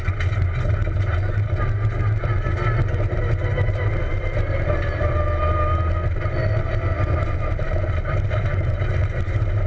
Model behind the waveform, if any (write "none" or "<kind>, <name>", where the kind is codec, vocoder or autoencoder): none